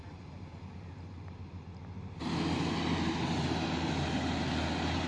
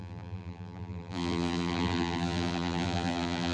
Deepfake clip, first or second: second